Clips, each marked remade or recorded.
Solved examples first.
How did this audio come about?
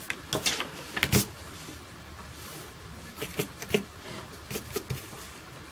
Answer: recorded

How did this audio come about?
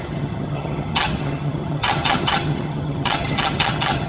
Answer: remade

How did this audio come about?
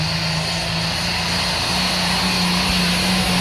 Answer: recorded